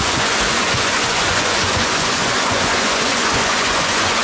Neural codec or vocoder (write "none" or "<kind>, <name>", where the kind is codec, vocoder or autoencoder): vocoder, Vocos